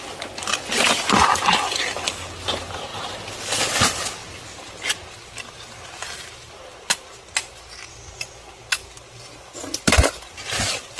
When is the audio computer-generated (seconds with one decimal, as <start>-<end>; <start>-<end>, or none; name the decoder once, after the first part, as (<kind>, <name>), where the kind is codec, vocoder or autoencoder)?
none